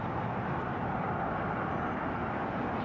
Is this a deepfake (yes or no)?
no